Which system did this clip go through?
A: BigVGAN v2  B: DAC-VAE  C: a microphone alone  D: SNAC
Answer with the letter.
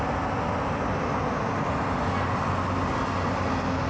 C